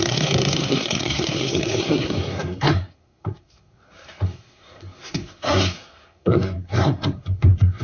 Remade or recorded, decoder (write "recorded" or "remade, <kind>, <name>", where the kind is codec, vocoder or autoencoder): remade, codec, SNAC